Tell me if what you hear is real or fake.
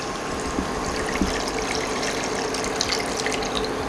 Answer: real